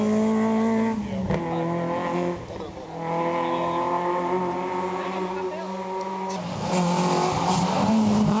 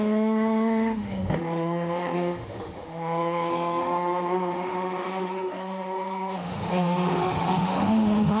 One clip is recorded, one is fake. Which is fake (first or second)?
second